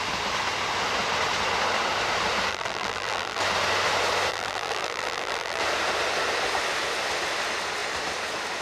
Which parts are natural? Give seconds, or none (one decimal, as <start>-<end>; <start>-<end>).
0.0-2.5; 3.4-4.3; 5.6-8.6